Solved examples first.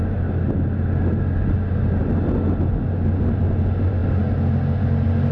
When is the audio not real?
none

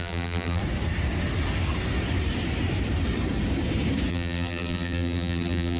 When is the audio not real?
0.0-0.6; 4.1-5.8

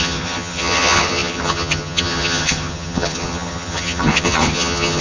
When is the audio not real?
0.0-5.0

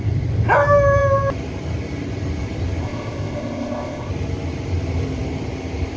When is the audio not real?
2.8-4.1

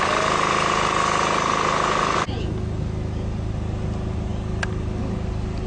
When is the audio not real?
none